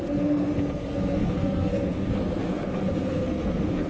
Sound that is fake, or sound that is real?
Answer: fake